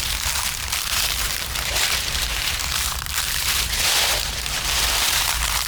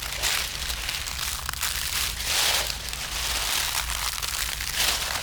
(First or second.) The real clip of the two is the second